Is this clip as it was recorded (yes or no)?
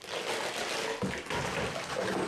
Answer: yes